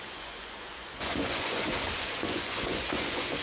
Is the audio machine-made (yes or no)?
yes